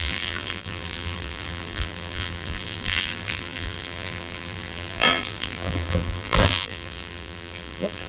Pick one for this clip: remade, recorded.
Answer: remade